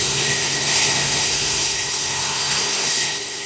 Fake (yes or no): yes